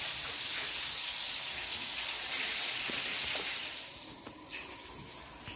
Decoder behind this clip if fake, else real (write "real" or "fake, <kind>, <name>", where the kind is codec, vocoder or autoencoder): real